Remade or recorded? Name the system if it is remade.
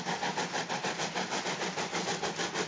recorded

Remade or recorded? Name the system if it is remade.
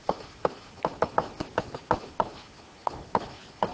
recorded